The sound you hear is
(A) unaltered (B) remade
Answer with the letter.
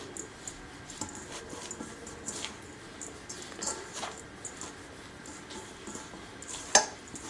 A